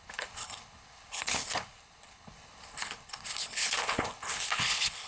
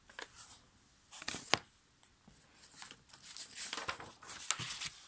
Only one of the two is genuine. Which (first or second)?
second